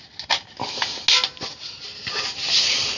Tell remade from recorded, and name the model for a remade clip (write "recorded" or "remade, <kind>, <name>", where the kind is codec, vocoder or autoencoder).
recorded